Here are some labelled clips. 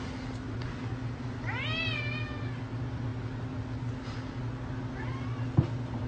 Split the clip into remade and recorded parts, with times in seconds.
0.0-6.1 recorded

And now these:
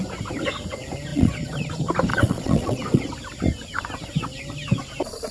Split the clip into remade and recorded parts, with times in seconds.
0.0-1.1 recorded; 1.1-1.7 remade; 1.7-2.1 recorded; 2.1-3.0 remade; 3.0-5.3 recorded

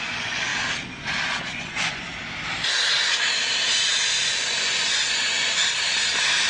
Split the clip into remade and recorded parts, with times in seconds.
0.0-0.5 remade; 0.5-1.2 recorded; 1.2-2.1 remade; 2.1-4.2 recorded; 4.2-5.6 remade; 5.6-6.5 recorded

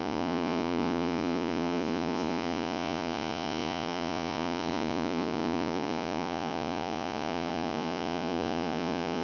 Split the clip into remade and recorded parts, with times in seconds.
0.0-9.2 remade

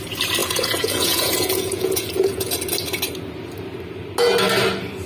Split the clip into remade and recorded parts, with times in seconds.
0.0-0.4 recorded; 0.4-2.5 remade; 2.5-5.1 recorded

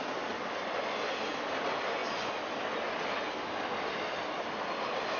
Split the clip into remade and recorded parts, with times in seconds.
0.0-5.2 recorded

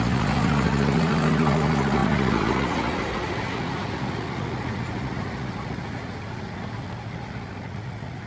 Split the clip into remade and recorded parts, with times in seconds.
0.0-8.3 remade

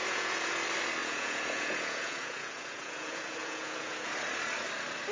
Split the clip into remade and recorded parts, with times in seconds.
0.0-0.5 remade; 0.5-1.0 recorded; 1.0-4.1 remade; 4.1-5.1 recorded